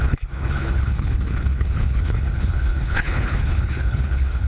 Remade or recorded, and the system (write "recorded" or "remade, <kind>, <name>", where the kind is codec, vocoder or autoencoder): remade, codec, HILCodec